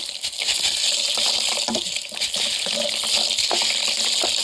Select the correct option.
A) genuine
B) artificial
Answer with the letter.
A